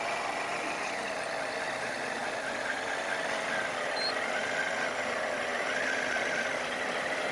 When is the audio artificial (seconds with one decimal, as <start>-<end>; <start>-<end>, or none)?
none